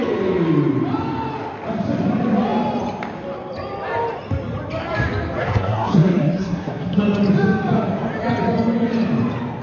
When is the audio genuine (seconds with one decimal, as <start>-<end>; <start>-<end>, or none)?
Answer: 0.0-5.4; 7.0-9.6